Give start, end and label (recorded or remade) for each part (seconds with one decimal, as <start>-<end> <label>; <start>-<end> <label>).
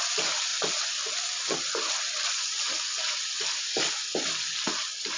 0.0-5.2 recorded